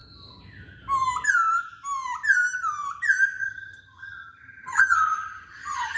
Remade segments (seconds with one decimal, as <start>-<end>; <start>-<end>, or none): 3.4-6.0